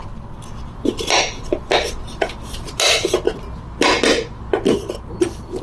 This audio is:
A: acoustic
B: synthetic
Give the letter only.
A